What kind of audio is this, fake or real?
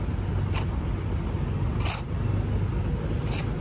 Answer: real